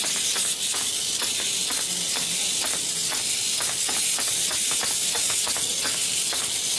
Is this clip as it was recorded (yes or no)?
yes